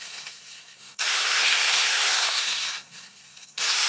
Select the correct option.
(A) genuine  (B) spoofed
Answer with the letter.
B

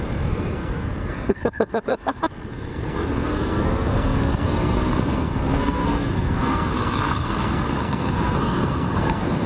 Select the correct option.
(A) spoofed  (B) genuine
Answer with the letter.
A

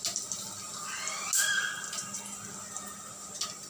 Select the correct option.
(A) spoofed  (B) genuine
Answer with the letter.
B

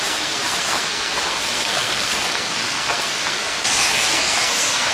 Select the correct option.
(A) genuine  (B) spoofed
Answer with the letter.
B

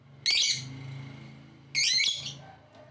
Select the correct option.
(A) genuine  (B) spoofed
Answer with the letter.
A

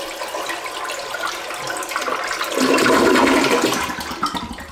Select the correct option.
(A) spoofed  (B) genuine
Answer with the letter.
B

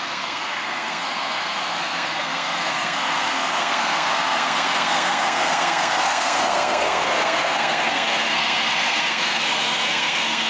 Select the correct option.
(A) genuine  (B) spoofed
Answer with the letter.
B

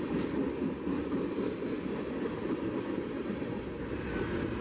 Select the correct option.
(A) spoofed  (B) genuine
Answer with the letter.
B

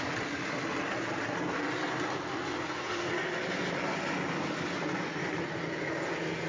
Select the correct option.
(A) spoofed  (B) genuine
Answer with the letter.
B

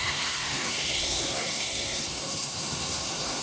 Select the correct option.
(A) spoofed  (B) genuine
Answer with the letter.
A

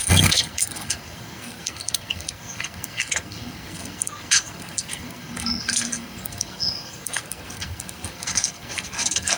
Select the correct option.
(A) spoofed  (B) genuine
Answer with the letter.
A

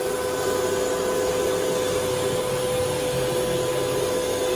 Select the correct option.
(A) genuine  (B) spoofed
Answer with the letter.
A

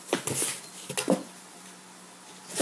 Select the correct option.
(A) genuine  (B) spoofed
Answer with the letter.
A